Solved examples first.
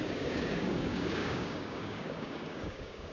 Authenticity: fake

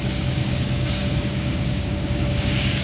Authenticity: fake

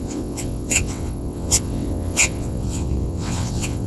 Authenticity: fake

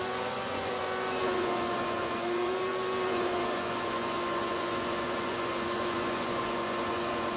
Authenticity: fake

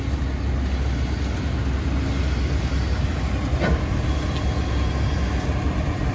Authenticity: real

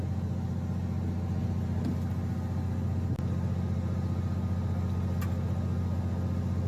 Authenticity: real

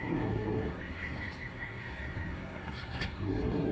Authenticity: fake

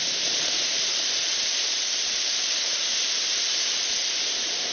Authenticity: fake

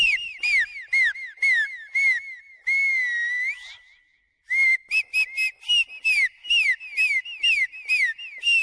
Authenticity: real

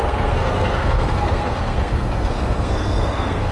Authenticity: fake